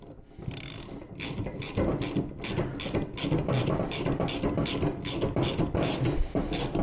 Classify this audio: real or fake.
real